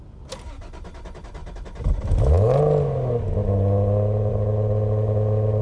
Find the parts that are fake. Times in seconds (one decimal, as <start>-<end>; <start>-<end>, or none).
none